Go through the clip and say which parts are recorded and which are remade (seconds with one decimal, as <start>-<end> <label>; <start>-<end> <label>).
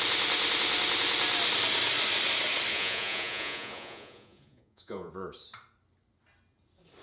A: 0.0-2.7 recorded; 2.7-5.1 remade; 5.1-7.0 recorded